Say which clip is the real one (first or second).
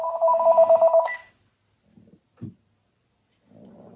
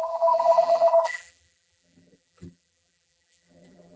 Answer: first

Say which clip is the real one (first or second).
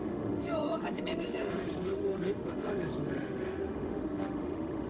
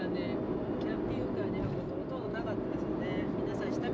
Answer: second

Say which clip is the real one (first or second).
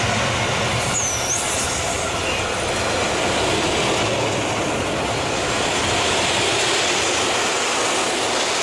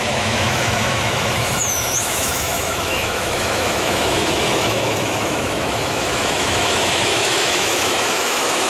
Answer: first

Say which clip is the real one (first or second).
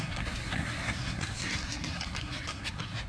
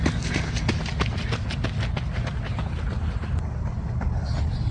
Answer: second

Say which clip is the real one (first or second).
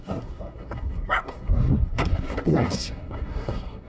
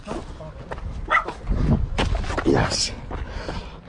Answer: second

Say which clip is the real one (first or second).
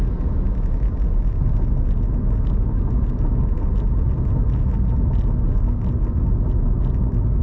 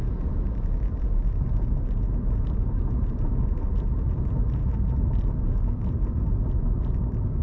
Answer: first